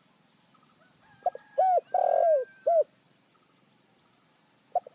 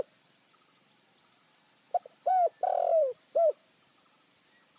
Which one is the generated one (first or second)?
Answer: second